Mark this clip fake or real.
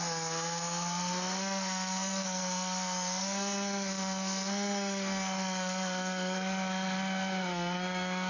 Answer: fake